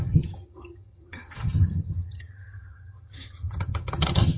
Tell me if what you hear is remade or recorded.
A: remade